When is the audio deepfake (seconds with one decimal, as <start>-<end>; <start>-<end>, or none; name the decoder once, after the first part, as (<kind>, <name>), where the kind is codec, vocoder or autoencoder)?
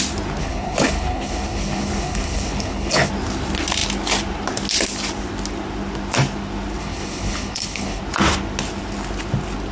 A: 0.4-3.1 (codec, HILCodec); 6.8-8.0